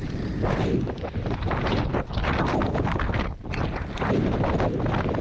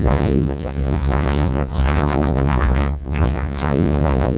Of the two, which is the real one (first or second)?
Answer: first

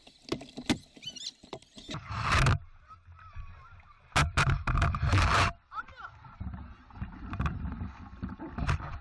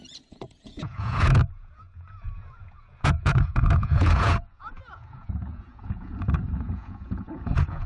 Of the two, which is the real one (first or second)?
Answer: first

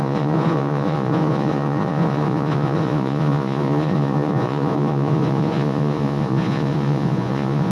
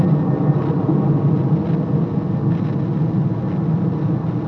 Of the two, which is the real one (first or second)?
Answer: second